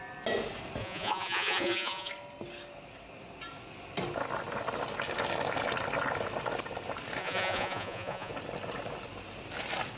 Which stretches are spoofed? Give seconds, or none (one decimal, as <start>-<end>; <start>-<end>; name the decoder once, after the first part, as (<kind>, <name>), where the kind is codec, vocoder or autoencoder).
0.8-2.1 (vocoder, Vocos); 7.2-8.3